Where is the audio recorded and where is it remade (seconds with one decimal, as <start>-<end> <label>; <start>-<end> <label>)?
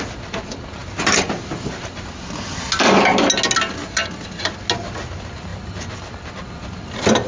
0.0-7.3 recorded